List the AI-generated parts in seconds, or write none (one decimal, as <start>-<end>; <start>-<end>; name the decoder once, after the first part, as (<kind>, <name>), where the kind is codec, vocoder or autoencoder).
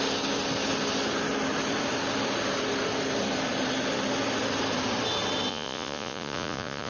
5.5-6.9 (vocoder, Vocos)